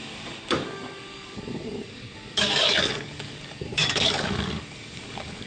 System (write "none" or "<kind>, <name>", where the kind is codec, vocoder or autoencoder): codec, DAC